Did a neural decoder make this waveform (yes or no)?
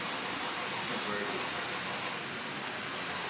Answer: no